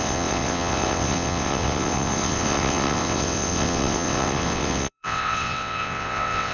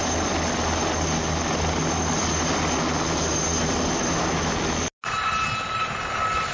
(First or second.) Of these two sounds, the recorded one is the second